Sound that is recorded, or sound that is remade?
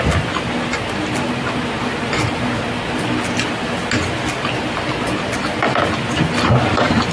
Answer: recorded